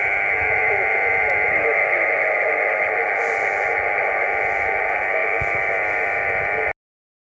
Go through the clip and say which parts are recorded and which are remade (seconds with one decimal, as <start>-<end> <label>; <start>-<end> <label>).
0.0-1.7 recorded; 1.7-3.7 remade; 3.7-5.2 recorded; 5.2-5.7 remade; 5.7-7.3 recorded